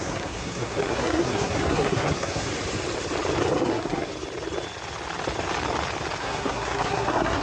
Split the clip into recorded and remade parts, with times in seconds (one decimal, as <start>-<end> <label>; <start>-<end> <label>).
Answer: 0.0-2.5 remade; 2.5-3.4 recorded; 3.4-4.1 remade; 4.1-6.2 recorded; 6.2-7.4 remade

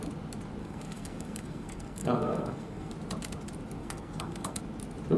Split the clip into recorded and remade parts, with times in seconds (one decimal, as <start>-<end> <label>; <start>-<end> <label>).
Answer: 0.0-0.6 recorded; 0.6-2.9 remade; 2.9-3.8 recorded; 3.8-4.6 remade; 4.6-5.2 recorded

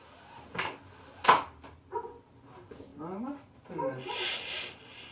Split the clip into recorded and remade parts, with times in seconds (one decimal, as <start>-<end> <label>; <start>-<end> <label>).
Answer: 0.0-5.1 recorded

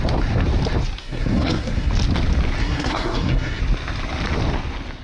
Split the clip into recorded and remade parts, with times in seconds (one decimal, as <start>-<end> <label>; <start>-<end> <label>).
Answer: 0.0-1.0 recorded; 1.0-1.9 remade; 1.9-2.6 recorded; 2.6-3.6 remade; 3.6-5.0 recorded

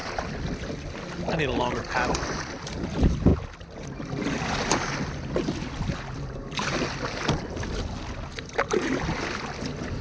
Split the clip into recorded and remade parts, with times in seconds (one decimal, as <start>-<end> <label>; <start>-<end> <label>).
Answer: 0.0-10.0 recorded

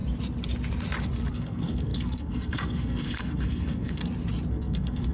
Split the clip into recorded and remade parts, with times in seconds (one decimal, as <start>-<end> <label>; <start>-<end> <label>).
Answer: 0.0-1.3 recorded; 1.3-4.0 remade; 4.0-4.5 recorded; 4.5-5.1 remade